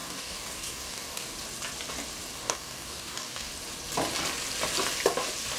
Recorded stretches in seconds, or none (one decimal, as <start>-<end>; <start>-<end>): 1.3-2.4; 3.5-5.6